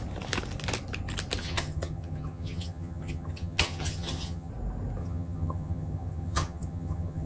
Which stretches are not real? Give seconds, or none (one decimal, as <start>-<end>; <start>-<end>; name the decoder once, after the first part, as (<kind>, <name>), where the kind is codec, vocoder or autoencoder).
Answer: 1.4-4.5 (vocoder, HiFi-GAN); 5.0-7.3